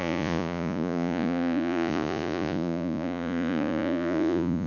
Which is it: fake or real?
fake